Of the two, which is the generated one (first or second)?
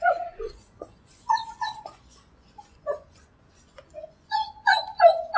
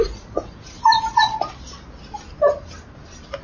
first